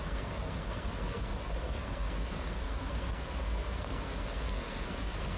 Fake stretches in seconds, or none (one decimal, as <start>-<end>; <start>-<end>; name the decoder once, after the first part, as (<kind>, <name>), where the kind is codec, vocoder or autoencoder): 0.0-5.4 (codec, SNAC)